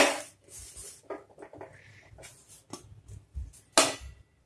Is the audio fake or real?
real